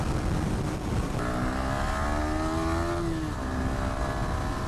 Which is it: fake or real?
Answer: real